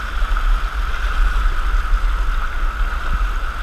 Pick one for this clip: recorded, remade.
recorded